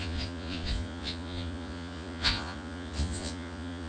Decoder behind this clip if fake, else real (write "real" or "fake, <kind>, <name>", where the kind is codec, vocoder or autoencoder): fake, vocoder, Vocos